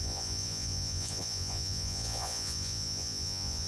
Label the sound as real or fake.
fake